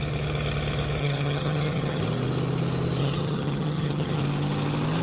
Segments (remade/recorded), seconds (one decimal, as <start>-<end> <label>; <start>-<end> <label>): 0.0-1.0 recorded; 1.0-2.0 remade; 2.0-3.0 recorded; 3.0-4.2 remade; 4.2-5.0 recorded